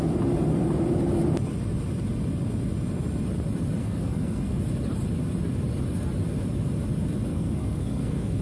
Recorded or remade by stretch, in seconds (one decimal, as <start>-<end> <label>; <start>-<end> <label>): 0.0-3.8 recorded; 3.8-4.6 remade; 4.6-7.3 recorded; 7.3-8.4 remade